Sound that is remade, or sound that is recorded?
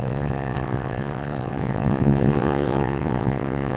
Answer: remade